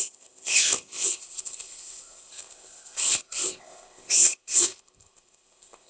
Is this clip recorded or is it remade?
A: remade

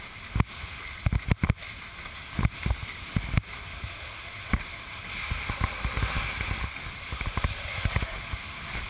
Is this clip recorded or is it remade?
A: recorded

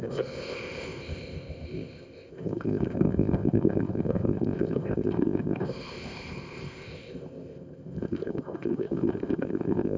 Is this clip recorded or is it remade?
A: remade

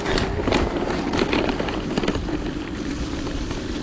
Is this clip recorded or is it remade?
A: recorded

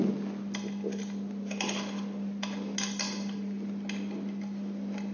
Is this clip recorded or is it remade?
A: recorded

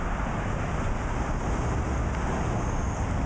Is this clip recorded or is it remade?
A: recorded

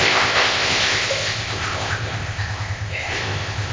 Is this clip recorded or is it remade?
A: remade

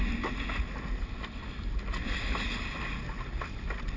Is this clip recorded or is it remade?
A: recorded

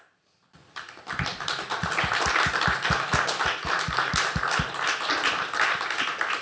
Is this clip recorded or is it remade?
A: recorded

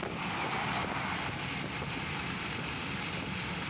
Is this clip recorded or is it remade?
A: recorded